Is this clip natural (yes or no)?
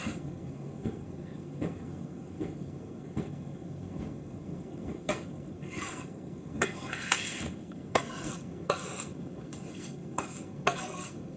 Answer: no